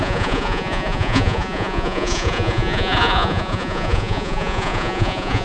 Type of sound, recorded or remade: remade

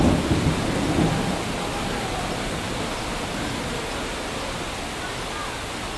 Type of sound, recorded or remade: recorded